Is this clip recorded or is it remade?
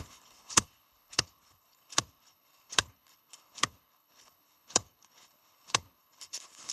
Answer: remade